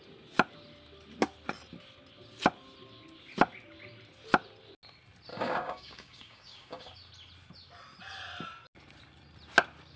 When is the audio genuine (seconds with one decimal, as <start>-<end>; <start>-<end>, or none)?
0.0-5.3; 6.9-10.0